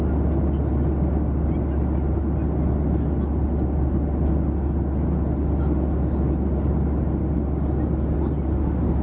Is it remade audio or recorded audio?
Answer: recorded